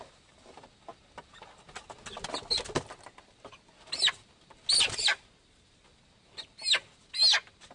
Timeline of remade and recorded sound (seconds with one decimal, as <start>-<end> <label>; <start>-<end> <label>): 0.0-7.7 recorded